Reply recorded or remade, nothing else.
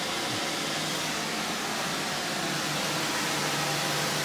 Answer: recorded